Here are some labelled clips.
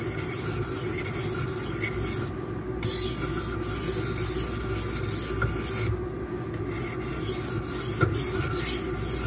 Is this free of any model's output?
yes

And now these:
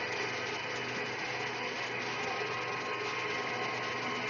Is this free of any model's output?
yes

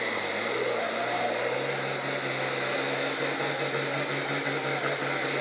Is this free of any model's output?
yes